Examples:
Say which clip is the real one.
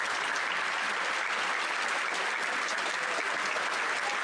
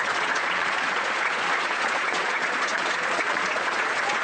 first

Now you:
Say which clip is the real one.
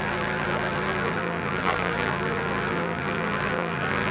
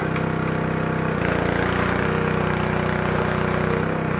second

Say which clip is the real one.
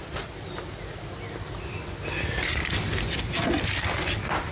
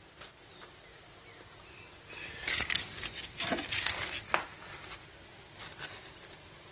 second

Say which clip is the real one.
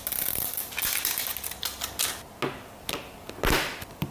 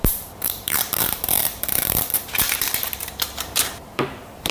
first